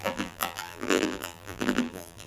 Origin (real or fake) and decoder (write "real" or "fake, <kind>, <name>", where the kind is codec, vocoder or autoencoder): fake, vocoder, BigVGAN v2